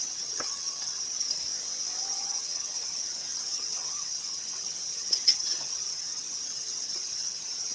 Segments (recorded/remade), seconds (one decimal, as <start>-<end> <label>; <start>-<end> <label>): 0.0-1.4 remade; 1.4-2.1 recorded; 2.1-7.7 remade